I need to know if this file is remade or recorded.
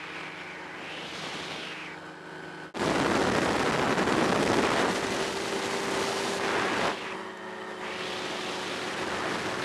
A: recorded